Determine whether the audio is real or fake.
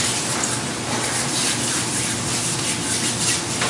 real